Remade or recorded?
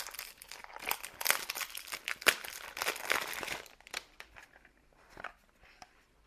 recorded